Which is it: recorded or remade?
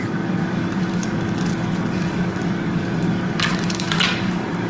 remade